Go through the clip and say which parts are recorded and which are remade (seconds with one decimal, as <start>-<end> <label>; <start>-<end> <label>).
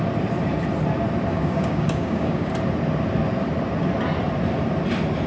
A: 0.0-1.3 recorded; 1.3-2.5 remade; 2.5-5.3 recorded